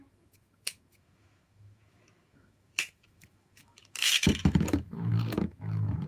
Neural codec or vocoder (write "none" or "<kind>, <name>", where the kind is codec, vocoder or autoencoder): autoencoder, DAC-VAE